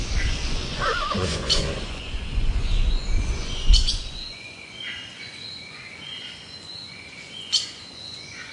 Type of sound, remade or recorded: remade